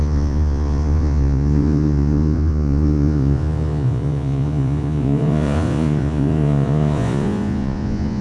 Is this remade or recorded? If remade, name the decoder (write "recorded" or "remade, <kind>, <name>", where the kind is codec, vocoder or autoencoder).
remade, vocoder, Vocos